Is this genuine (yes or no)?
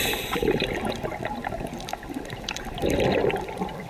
no